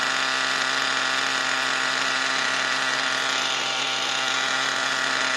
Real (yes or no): yes